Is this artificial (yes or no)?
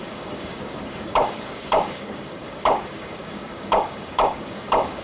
yes